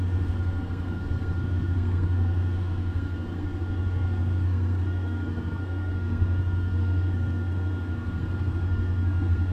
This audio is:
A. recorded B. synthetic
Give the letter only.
B